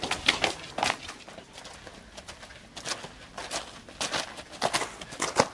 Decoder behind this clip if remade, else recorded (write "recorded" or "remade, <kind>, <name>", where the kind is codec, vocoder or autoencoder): recorded